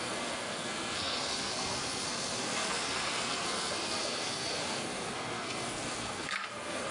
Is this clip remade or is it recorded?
remade